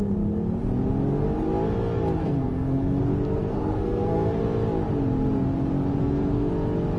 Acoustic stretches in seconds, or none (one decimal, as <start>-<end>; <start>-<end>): 0.0-2.2; 3.0-3.4; 4.4-6.0; 6.5-7.0